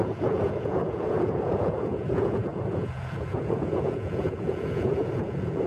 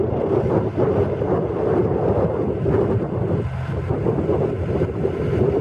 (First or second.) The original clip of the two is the second